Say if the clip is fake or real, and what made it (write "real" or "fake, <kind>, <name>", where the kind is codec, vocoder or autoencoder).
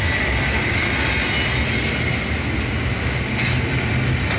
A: real